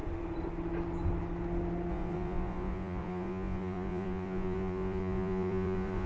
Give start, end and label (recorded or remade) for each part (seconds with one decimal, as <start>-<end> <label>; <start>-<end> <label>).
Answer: 0.0-1.9 recorded; 1.9-6.1 remade